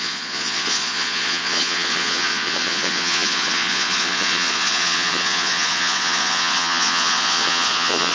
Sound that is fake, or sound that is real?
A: fake